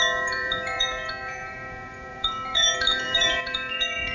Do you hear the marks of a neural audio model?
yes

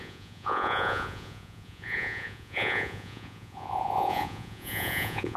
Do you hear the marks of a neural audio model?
yes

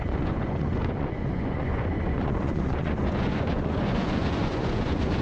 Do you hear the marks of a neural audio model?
yes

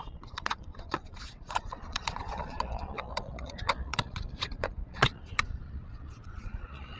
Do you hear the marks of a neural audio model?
yes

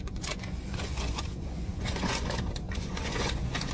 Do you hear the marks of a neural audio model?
yes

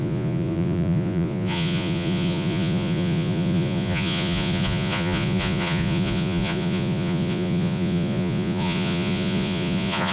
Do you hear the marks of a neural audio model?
yes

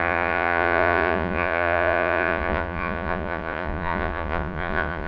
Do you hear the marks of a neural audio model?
yes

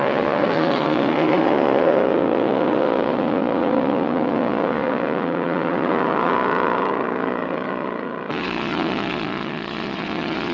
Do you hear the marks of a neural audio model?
yes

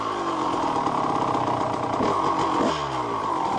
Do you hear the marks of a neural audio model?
no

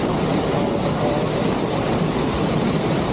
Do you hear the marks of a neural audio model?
no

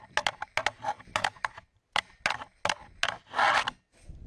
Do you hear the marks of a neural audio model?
no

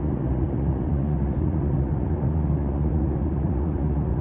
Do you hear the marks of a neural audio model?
yes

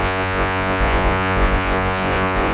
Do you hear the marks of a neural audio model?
yes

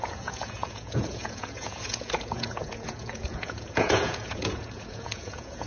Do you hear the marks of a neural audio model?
yes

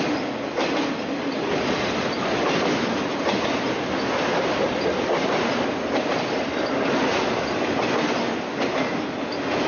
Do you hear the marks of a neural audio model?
no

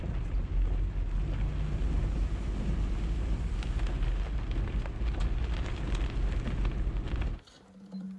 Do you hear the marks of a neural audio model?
no